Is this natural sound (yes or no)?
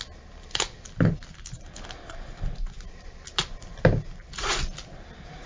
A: yes